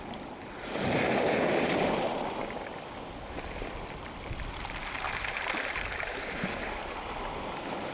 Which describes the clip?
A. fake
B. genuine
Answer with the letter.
B